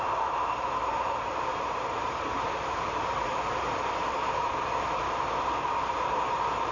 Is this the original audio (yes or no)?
no